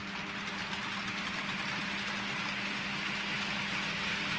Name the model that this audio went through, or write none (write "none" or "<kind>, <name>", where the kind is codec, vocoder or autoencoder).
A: none